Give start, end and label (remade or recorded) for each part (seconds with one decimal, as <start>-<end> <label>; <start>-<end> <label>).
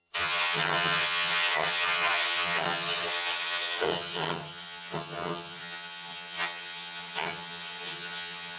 0.0-8.6 remade